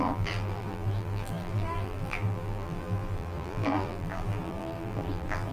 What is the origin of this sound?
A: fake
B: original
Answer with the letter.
A